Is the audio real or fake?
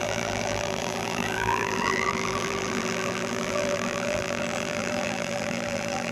fake